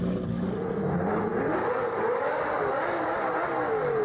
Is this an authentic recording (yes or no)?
yes